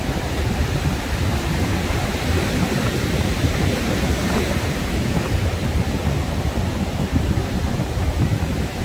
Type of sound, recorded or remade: remade